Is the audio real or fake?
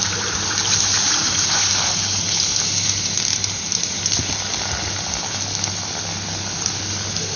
real